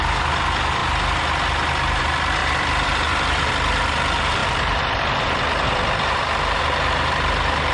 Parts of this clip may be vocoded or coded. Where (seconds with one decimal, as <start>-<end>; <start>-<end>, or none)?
2.4-3.5